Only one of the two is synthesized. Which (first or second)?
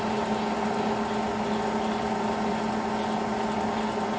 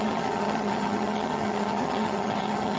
second